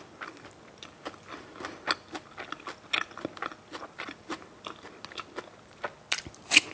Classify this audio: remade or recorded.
recorded